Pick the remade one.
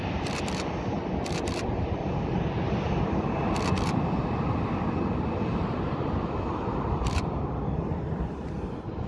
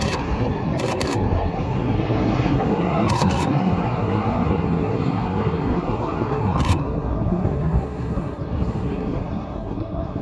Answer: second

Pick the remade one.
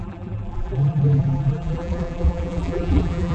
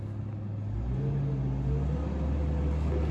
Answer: first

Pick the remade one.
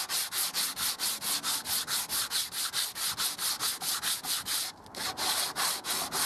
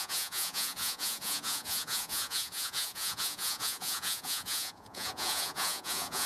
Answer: second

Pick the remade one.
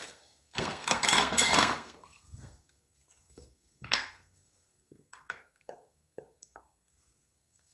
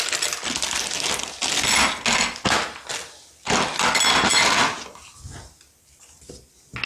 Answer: first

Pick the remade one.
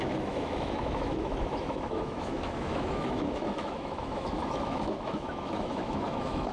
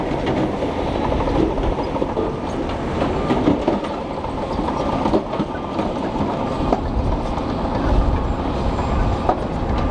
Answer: first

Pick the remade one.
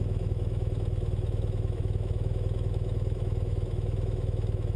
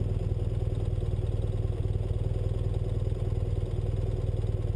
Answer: first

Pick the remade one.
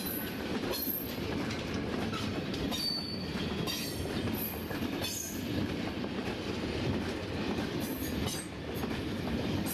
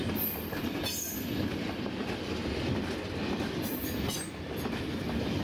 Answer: first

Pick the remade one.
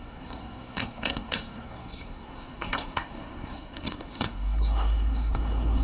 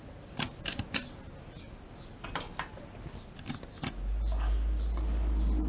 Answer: first